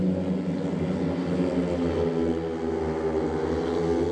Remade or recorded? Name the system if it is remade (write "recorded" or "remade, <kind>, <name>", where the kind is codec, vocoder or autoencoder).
recorded